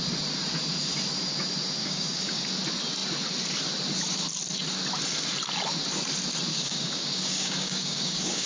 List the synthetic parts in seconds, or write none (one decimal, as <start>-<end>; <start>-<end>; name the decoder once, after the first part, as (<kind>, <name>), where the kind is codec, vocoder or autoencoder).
1.8-2.4 (codec, DAC); 6.5-8.5